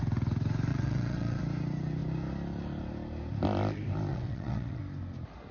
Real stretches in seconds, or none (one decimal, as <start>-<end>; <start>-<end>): 0.0-0.7; 1.4-4.1; 4.8-5.5